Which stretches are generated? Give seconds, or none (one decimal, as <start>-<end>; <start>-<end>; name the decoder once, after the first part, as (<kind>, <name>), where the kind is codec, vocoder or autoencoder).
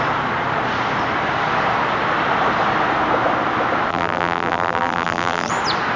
3.9-5.5 (vocoder, BigVGAN v2)